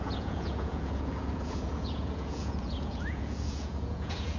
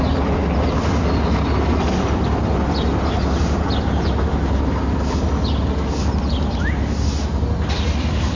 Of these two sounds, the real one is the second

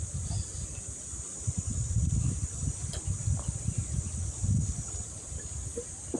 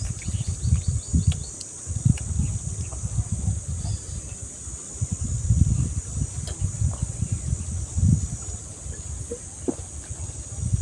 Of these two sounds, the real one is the second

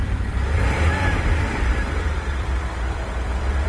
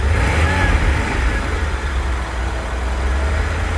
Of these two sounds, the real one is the second